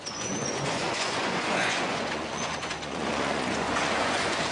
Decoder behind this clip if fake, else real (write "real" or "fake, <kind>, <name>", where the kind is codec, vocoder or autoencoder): fake, vocoder, Vocos